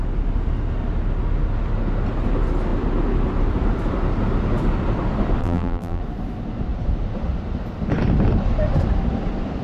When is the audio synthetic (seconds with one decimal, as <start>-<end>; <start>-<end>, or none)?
5.4-6.0